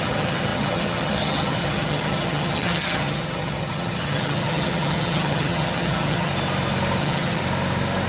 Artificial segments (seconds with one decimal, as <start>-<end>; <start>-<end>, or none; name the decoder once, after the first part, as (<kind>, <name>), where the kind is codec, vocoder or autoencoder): 0.0-6.3 (vocoder, HiFi-GAN); 7.0-7.4